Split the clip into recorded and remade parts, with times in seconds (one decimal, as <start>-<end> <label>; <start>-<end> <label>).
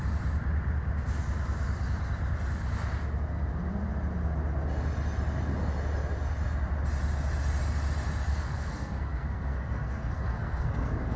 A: 0.0-8.3 recorded; 8.3-11.2 remade